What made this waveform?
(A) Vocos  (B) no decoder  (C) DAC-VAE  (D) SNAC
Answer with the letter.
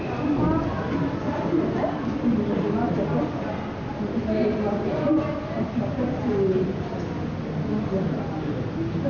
B